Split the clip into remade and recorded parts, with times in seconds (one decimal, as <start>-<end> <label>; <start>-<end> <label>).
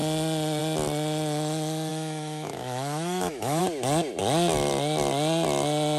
0.0-1.9 recorded; 1.9-3.6 remade; 3.6-6.0 recorded